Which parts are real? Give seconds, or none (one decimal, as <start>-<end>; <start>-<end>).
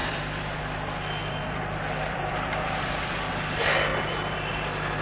0.6-1.2; 3.3-3.9; 4.5-5.0